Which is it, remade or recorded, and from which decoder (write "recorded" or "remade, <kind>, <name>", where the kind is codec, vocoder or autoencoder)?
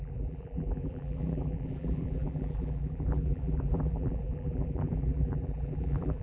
remade, vocoder, BigVGAN v2